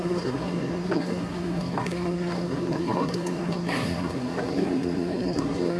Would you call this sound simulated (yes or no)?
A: yes